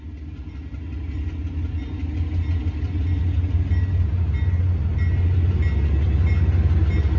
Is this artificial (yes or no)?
no